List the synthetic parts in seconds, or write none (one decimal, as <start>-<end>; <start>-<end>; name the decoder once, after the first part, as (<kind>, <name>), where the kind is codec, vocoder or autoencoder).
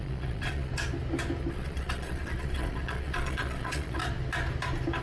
0.0-0.7 (vocoder, Vocos); 1.5-4.0